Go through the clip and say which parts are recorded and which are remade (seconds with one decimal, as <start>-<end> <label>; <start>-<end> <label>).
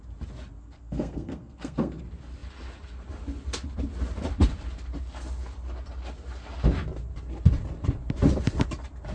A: 0.0-0.6 recorded; 0.6-2.0 remade; 2.0-9.1 recorded